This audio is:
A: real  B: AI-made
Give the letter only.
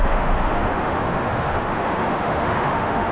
B